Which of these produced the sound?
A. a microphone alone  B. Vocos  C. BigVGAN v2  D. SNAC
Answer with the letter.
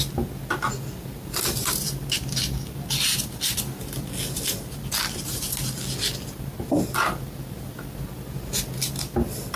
A